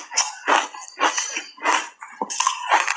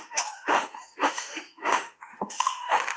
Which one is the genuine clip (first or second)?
first